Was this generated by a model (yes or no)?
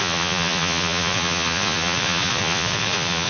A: yes